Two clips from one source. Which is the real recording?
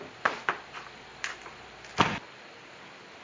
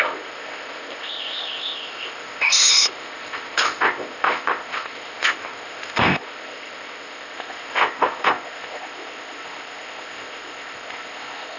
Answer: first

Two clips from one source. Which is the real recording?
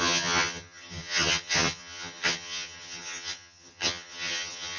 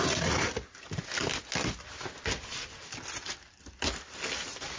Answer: second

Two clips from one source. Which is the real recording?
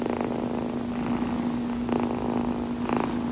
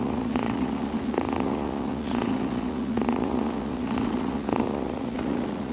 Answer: first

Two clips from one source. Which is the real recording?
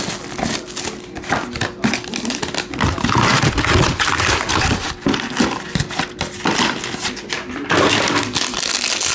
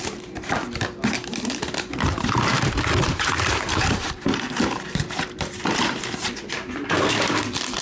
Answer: first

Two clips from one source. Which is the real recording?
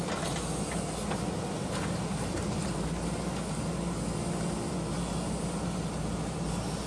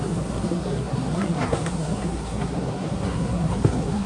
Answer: first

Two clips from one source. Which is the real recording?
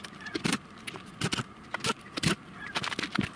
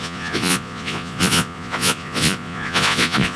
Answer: first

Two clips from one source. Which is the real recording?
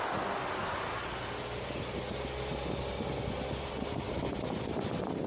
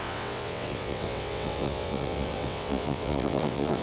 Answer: first